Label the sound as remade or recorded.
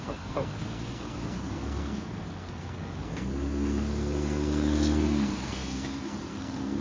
remade